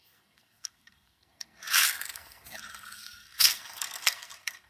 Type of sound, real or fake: fake